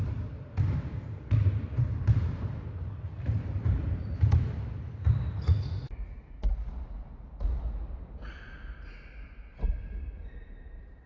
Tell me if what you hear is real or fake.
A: real